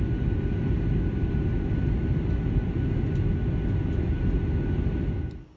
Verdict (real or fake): real